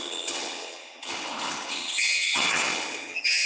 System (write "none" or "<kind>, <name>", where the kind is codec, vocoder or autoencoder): vocoder, HiFi-GAN